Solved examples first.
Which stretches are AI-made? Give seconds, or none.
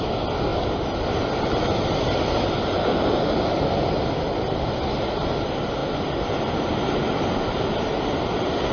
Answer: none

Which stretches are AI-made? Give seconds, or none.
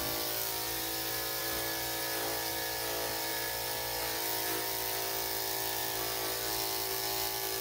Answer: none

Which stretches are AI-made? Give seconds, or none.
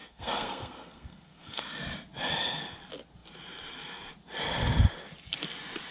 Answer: 0.0-1.6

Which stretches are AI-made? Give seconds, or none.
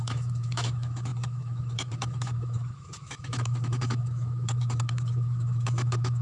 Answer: 0.0-6.2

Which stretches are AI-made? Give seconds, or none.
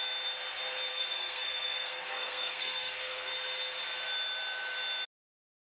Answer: 0.9-3.3